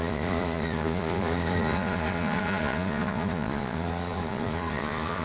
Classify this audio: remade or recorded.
remade